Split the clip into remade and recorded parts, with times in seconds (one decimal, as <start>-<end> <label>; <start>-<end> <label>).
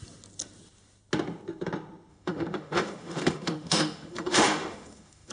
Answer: 0.0-2.1 recorded; 2.1-5.3 remade